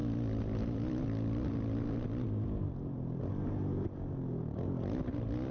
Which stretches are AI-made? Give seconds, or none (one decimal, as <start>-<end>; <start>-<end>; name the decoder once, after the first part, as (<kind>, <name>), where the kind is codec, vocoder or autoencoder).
0.0-3.2 (vocoder, BigVGAN v2)